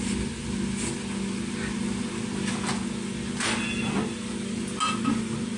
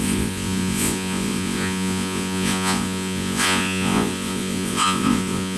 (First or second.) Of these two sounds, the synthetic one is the second